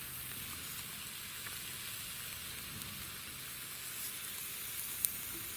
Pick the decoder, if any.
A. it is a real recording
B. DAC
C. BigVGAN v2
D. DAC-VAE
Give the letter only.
A